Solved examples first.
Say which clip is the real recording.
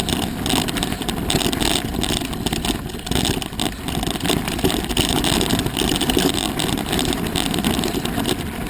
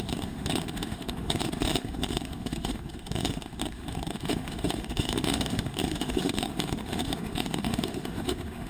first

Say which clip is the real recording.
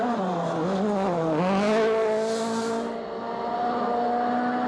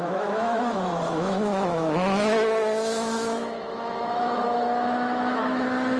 first